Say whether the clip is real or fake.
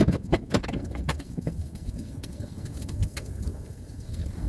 fake